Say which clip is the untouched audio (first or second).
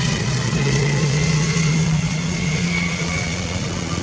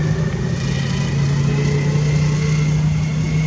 second